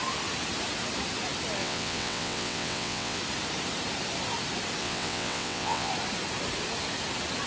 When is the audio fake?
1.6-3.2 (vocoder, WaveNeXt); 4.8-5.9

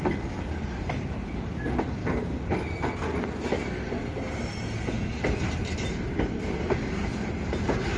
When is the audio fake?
7.1-7.6 (vocoder, BigVGAN v2)

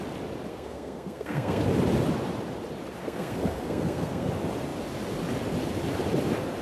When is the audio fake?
0.5-1.6 (codec, SNAC); 3.0-4.3

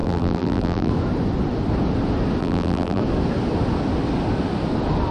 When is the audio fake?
0.0-0.9 (vocoder, BigVGAN v2); 2.4-3.0

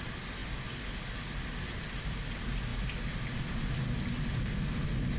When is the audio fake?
none

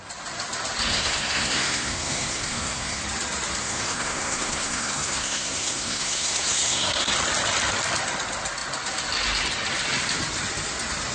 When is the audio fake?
0.9-3.0 (codec, SNAC); 3.6-7.1